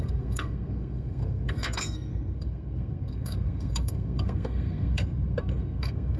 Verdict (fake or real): fake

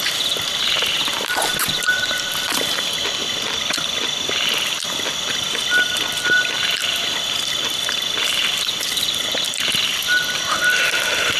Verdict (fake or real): real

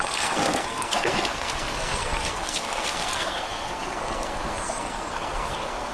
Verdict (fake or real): fake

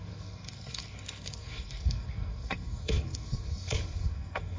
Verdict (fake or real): fake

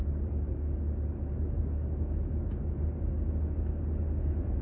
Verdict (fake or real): real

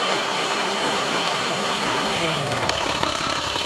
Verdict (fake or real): fake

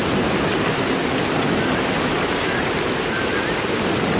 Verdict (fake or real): real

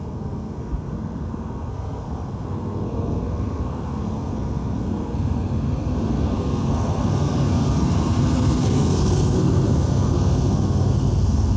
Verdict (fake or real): fake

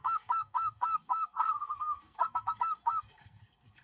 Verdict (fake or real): fake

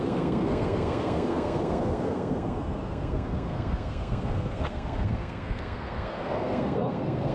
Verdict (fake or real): fake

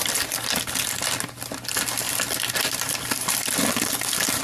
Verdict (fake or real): real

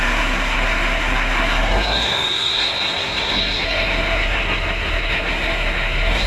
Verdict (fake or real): fake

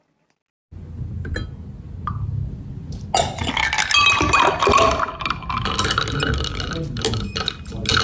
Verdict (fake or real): real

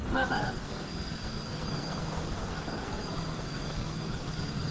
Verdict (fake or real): fake